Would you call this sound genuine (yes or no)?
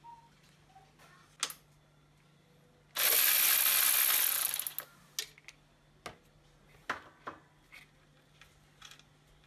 yes